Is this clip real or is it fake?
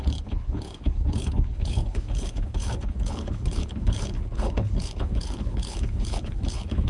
fake